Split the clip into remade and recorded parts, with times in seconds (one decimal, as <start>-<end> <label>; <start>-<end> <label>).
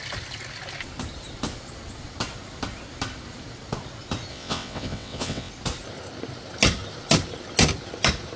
0.0-4.3 recorded; 4.3-5.5 remade; 5.5-8.4 recorded